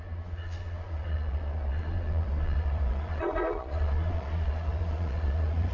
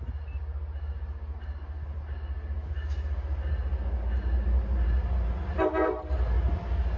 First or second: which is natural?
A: second